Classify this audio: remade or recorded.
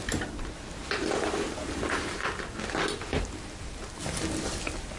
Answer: recorded